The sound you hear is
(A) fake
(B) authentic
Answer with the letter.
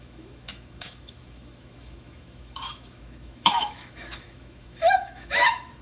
A